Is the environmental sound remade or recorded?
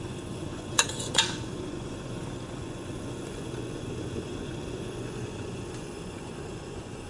remade